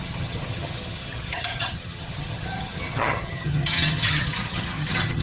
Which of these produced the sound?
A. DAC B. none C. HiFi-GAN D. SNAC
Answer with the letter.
C